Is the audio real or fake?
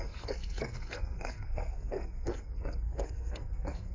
fake